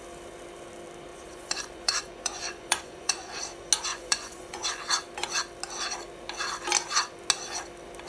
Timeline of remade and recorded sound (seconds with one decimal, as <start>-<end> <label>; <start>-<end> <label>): 0.0-1.1 recorded; 1.1-3.4 remade; 3.4-3.9 recorded; 3.9-4.8 remade; 4.8-8.1 recorded